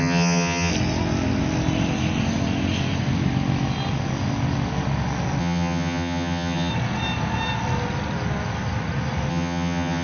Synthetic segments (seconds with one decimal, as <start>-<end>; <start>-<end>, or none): 0.0-0.7; 5.4-6.7; 9.3-10.0